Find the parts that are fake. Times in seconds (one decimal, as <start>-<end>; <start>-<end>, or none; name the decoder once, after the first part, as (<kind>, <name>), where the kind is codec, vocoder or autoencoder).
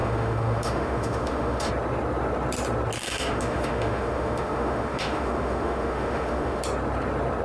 0.0-1.7 (autoencoder, DAC-VAE); 3.0-6.6